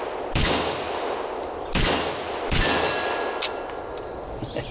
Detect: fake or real real